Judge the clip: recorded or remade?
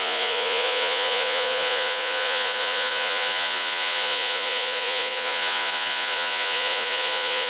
remade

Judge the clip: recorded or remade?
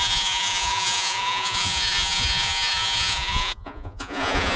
remade